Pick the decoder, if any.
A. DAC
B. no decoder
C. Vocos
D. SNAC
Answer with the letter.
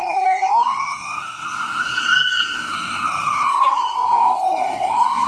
D